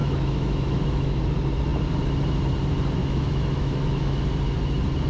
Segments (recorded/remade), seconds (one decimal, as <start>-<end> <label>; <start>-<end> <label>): 0.0-1.2 remade; 1.2-3.0 recorded; 3.0-4.2 remade; 4.2-5.1 recorded